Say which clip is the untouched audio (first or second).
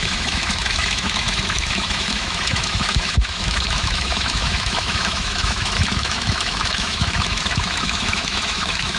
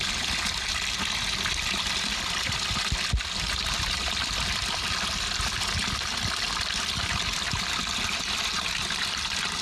second